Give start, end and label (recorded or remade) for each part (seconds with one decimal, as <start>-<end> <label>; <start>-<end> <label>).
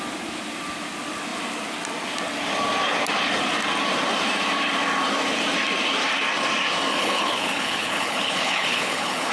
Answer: 0.0-6.9 recorded; 6.9-9.3 remade